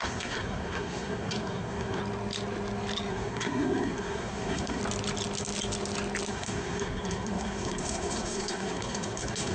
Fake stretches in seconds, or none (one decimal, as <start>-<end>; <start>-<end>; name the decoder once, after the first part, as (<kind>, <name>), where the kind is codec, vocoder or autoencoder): 0.0-2.0 (codec, SNAC); 3.1-4.8; 6.3-9.5